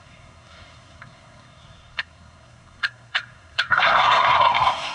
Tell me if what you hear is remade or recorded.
remade